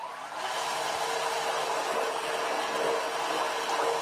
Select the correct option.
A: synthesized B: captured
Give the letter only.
B